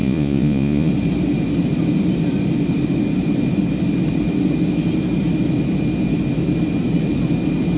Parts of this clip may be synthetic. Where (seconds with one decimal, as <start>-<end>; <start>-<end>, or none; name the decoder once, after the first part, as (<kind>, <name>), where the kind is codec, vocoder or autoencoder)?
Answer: 0.0-0.9 (vocoder, Vocos)